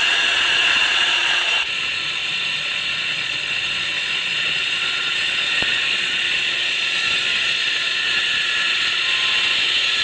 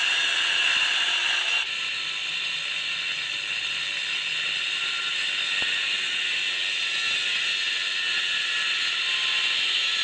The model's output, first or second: first